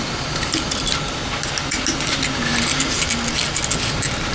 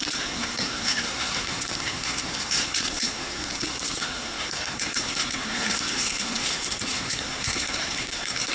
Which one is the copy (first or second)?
second